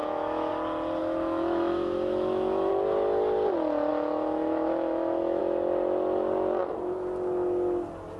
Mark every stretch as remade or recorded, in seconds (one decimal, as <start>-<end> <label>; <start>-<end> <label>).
0.0-0.5 remade; 0.5-1.0 recorded; 1.0-2.7 remade; 2.7-3.9 recorded; 3.9-5.4 remade; 5.4-8.2 recorded